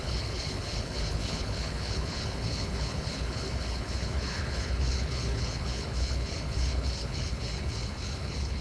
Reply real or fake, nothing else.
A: fake